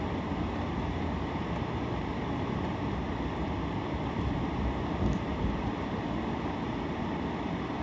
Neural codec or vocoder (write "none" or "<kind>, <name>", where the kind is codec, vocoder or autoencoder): none